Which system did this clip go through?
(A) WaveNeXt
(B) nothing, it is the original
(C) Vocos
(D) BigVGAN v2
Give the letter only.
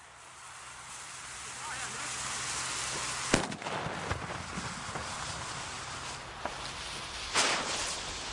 B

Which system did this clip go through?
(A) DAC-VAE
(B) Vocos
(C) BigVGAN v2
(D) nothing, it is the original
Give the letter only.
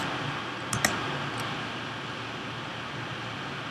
D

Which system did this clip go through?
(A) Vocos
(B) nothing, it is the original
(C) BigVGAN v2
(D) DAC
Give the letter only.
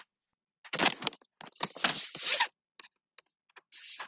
B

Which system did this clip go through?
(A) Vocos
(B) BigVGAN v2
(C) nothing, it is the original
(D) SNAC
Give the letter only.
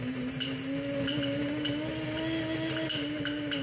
C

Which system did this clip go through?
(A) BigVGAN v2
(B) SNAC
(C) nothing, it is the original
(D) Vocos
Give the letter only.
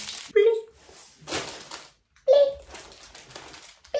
C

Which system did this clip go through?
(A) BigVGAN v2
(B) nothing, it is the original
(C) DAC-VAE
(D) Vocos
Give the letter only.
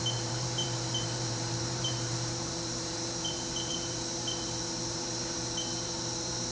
A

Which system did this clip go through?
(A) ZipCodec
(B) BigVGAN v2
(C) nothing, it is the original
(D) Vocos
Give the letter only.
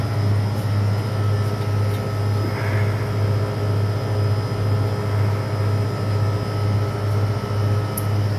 C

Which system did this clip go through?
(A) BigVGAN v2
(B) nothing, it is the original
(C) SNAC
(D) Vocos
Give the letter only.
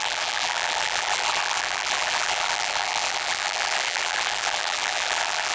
A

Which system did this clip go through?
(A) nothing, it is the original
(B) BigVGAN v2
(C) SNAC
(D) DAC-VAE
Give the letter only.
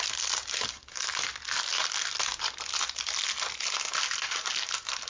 A